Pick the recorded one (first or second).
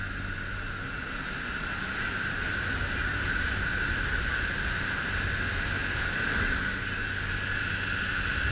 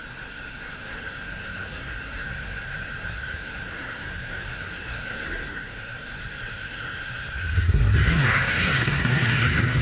first